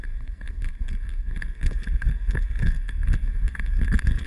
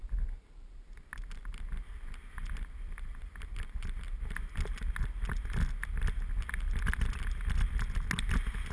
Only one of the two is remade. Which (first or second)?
first